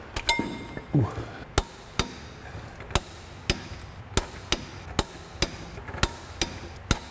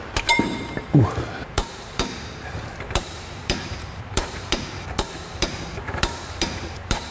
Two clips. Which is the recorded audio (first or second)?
first